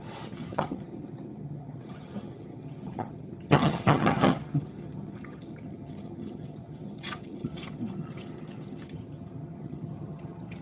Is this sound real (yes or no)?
no